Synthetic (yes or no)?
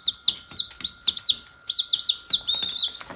no